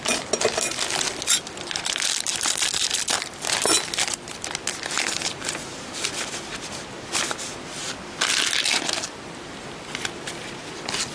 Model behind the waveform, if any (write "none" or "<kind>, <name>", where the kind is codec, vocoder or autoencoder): none